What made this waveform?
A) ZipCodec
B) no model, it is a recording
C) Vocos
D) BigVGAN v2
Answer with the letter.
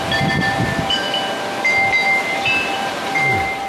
D